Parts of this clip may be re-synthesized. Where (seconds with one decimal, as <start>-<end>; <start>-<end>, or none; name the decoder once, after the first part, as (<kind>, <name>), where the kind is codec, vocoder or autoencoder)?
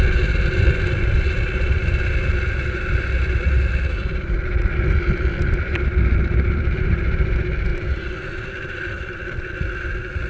none